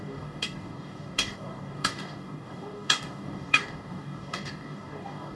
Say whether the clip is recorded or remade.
remade